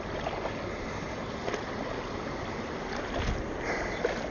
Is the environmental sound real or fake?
real